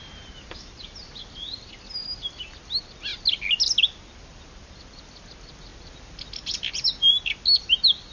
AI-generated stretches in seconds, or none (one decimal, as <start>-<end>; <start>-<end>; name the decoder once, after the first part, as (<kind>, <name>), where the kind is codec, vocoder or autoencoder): 0.0-1.5 (vocoder, BigVGAN v2)